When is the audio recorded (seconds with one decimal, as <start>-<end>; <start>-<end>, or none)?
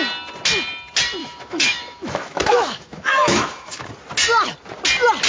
0.0-1.2; 3.9-5.3